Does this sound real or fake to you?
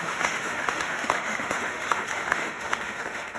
fake